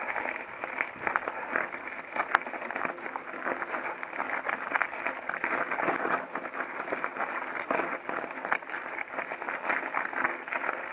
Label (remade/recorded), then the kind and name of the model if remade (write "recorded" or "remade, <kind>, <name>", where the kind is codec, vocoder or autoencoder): recorded